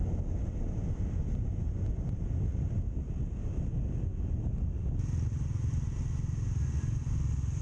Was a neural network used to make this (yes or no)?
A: no